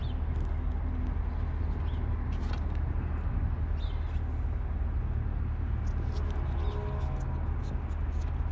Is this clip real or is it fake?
real